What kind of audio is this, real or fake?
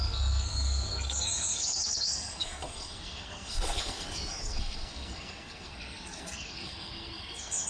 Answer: fake